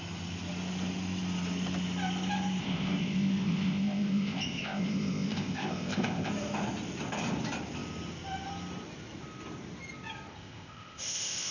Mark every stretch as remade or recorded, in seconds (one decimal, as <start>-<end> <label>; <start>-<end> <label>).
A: 0.0-2.6 recorded; 2.6-6.3 remade; 6.3-10.3 recorded; 10.3-11.5 remade